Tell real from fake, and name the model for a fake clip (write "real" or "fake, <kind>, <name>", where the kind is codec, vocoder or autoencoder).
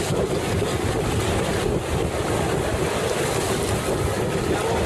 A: real